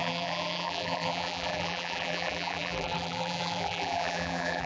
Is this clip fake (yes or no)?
yes